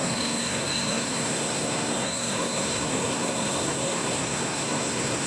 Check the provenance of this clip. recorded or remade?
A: remade